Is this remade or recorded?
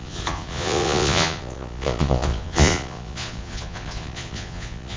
remade